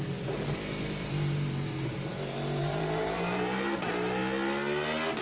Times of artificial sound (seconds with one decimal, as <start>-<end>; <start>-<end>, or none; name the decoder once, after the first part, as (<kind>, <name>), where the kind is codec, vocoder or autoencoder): 0.0-4.2 (vocoder, BigVGAN v2)